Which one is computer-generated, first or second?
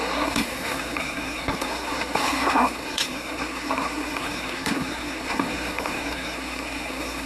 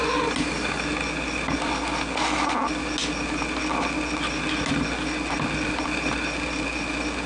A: first